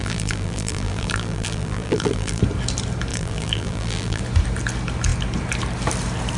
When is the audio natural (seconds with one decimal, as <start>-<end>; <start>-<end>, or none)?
2.4-3.1; 4.2-6.4